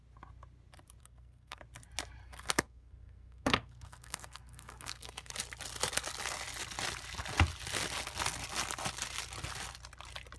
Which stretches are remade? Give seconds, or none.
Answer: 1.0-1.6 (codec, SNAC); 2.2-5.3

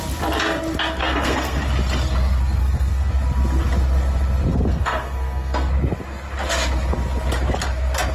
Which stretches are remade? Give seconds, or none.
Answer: 1.0-1.6 (codec, SNAC); 2.6-3.1; 4.5-5.7

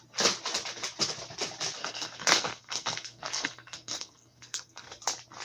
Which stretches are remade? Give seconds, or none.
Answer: 1.8-5.0 (codec, SNAC)

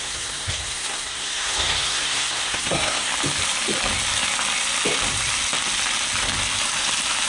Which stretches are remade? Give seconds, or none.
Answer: 0.0-3.1 (codec, SNAC)

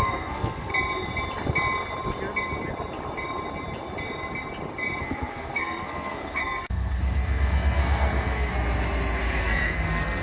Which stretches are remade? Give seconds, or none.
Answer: 0.0-0.7 (codec, SNAC); 5.0-8.5; 9.4-10.2

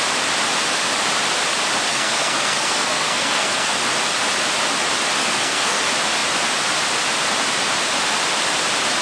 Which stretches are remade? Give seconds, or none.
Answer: 1.9-3.8 (codec, SNAC); 5.2-5.8

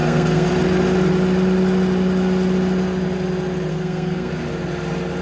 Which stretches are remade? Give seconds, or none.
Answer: 0.0-0.5 (codec, SNAC); 3.7-4.3